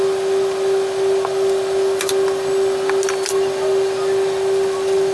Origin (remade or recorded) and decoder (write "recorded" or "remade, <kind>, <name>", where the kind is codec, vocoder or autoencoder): recorded